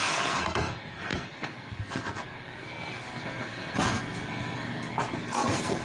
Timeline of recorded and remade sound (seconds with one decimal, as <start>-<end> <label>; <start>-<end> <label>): 0.0-5.8 remade

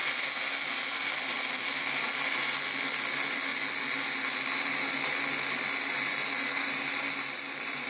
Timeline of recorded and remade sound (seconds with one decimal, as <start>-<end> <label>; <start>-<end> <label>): 0.0-7.9 recorded

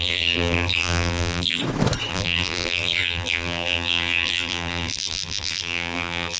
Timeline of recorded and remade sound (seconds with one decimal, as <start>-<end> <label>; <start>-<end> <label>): 0.0-1.6 remade; 1.6-2.1 recorded; 2.1-6.4 remade

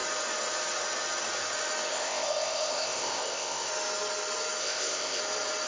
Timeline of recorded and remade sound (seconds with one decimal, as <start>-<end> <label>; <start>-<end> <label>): 0.0-1.9 recorded; 1.9-3.7 remade; 3.7-4.6 recorded; 4.6-5.2 remade; 5.2-5.7 recorded

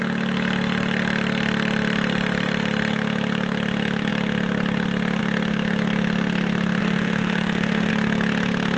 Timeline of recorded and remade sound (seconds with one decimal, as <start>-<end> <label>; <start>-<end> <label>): 0.0-6.8 recorded; 6.8-7.9 remade; 7.9-8.8 recorded

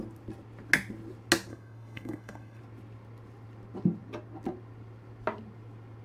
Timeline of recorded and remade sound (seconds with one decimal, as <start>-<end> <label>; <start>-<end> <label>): 0.0-1.5 recorded; 1.5-2.6 remade; 2.6-6.0 recorded